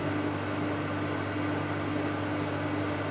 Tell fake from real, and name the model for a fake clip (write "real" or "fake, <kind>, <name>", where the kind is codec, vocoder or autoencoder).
real